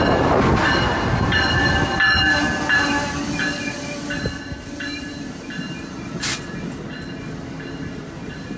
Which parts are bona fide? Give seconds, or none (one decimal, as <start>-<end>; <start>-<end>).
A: 0.0-8.6